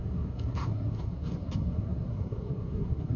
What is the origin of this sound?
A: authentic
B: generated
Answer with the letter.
B